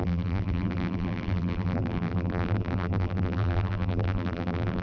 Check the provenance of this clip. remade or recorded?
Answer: remade